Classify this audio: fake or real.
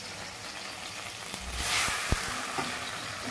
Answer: real